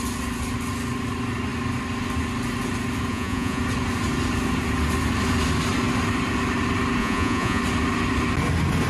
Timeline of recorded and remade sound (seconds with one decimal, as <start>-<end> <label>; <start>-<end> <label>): 0.0-3.1 recorded; 3.1-3.6 remade; 3.6-7.0 recorded; 7.0-7.6 remade; 7.6-8.9 recorded